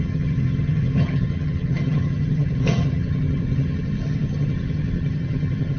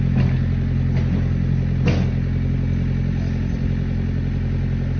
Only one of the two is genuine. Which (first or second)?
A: second